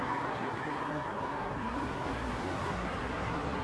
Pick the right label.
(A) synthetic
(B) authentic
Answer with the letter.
A